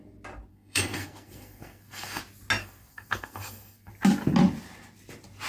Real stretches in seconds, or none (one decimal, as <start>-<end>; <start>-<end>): 0.0-0.5; 2.2-2.6; 3.9-5.5